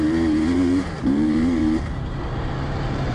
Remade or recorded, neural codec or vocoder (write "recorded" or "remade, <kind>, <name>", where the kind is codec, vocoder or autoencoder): remade, vocoder, BigVGAN v2